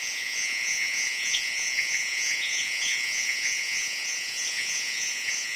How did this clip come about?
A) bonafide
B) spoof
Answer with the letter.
B